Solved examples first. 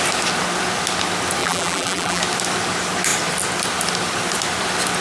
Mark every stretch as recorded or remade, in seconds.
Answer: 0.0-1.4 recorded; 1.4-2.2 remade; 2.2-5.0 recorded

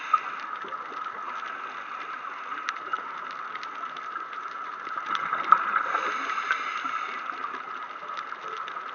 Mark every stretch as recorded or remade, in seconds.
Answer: 0.0-4.1 recorded; 4.1-5.8 remade; 5.8-8.9 recorded

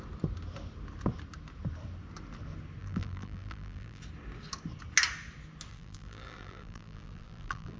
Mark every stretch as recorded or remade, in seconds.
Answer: 0.0-2.8 recorded; 2.8-4.0 remade; 4.0-5.7 recorded; 5.7-7.8 remade

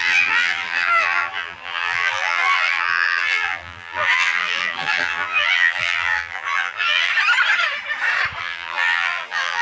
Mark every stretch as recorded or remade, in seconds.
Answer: 0.0-7.1 remade; 7.1-8.4 recorded; 8.4-9.6 remade

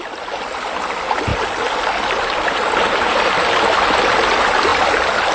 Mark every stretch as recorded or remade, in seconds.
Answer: 0.0-5.3 recorded